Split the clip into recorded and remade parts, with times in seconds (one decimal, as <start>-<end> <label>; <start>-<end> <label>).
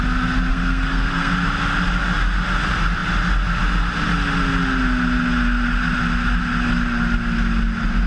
0.0-0.5 recorded; 0.5-1.3 remade; 1.3-8.1 recorded